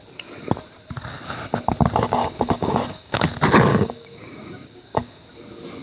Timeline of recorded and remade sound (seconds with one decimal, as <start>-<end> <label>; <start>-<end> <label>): 0.0-2.2 recorded; 2.2-3.3 remade; 3.3-3.7 recorded; 3.7-5.2 remade; 5.2-5.8 recorded